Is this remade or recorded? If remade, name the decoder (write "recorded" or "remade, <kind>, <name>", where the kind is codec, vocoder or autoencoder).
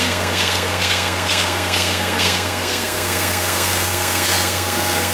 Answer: remade, codec, SNAC